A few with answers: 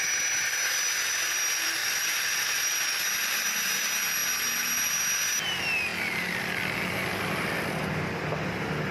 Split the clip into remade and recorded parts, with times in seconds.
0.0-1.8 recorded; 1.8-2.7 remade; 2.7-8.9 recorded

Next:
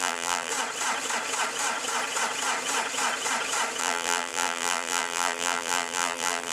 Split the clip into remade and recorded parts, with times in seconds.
0.0-0.5 remade; 0.5-3.8 recorded; 3.8-6.5 remade

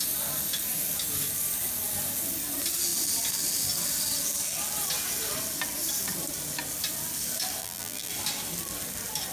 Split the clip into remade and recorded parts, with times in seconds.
0.0-7.6 recorded; 7.6-8.1 remade; 8.1-9.3 recorded